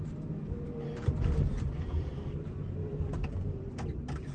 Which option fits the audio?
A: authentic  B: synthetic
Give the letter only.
B